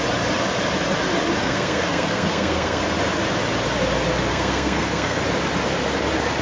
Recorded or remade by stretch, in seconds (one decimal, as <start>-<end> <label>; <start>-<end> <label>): 0.0-1.4 recorded; 1.4-2.8 remade; 2.8-4.3 recorded; 4.3-5.2 remade; 5.2-6.4 recorded